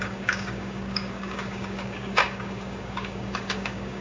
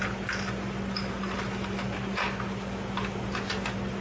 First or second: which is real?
second